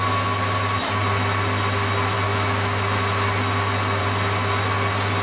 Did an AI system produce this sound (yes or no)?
no